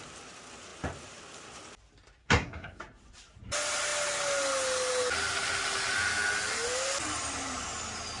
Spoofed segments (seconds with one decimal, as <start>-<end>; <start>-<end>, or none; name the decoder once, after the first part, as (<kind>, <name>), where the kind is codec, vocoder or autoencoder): 2.2-2.8 (codec, SNAC)